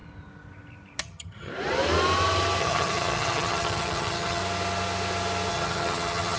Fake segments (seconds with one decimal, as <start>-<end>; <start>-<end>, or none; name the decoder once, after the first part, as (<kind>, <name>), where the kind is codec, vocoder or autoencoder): 1.0-1.5 (vocoder, HiFi-GAN); 2.6-4.4; 5.5-6.4